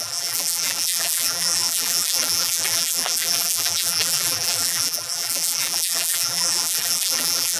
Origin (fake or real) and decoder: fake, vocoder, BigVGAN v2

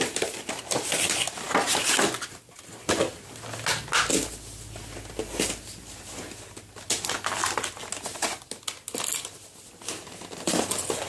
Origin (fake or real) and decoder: real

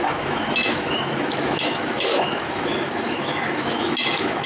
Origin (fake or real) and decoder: fake, autoencoder, DAC-VAE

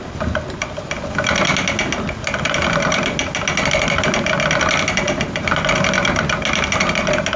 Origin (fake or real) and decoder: real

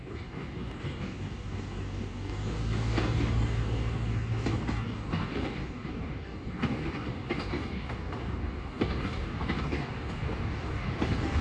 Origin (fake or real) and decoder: fake, codec, DAC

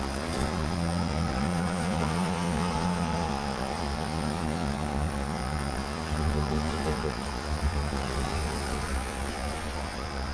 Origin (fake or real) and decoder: fake, vocoder, Vocos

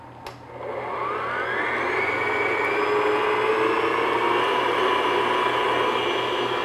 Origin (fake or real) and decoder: real